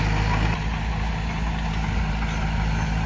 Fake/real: real